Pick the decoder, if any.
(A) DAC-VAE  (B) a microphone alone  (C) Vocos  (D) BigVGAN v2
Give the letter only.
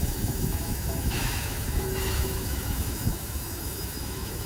A